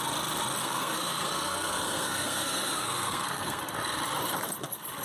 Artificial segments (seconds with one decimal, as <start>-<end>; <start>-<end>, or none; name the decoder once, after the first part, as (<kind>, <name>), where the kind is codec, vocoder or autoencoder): 0.6-3.6 (codec, SNAC)